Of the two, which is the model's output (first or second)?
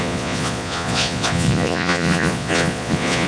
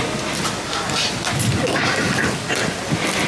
first